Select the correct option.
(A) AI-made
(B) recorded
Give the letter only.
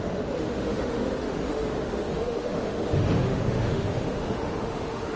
A